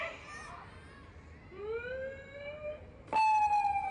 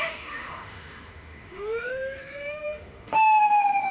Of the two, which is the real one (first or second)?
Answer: first